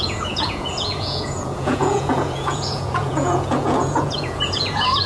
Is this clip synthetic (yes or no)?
yes